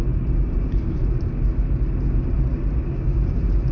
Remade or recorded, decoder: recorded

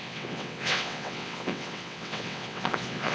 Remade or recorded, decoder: remade, vocoder, WaveNeXt